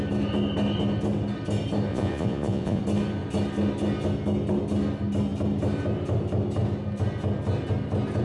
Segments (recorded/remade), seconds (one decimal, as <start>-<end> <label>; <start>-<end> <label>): 0.0-1.9 recorded; 1.9-2.8 remade; 2.8-8.2 recorded